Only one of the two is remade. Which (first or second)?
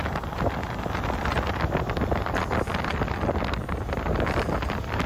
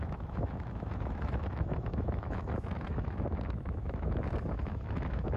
second